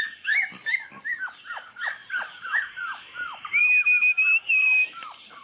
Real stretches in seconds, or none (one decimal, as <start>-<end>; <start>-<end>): none